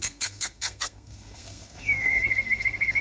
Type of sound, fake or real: fake